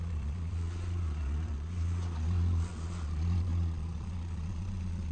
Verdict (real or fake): fake